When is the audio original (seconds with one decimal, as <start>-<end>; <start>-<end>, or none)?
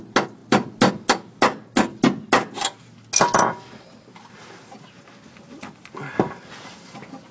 0.0-7.3